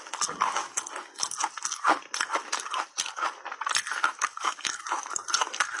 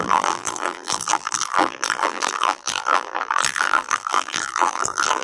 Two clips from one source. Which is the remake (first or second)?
second